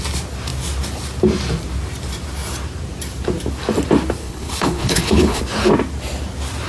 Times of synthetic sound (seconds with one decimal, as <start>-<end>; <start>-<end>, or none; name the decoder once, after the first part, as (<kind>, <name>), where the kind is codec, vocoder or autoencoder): 4.2-5.4 (codec, HILCodec)